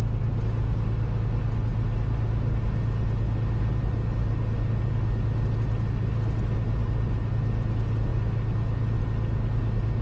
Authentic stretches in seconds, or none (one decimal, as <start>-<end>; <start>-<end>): 0.0-10.0